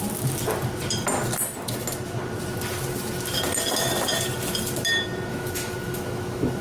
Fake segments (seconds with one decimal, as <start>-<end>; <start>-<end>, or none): 5.3-6.6